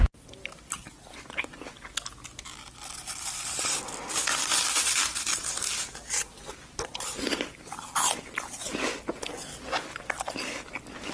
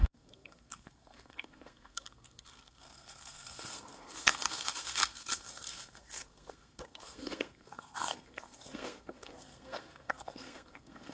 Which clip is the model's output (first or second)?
second